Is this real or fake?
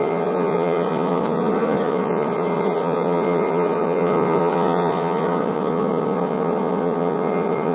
fake